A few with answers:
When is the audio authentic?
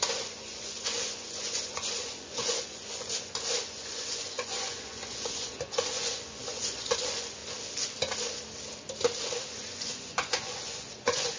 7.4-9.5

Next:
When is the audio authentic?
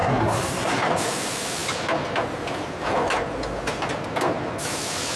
0.8-5.2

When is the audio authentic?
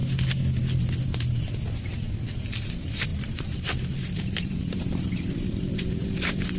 0.0-2.4